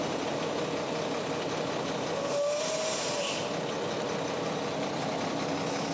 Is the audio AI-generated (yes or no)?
no